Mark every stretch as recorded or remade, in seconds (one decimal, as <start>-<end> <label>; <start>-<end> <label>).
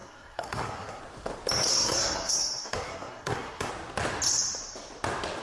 0.0-1.0 remade; 1.0-1.7 recorded; 1.7-3.7 remade; 3.7-5.4 recorded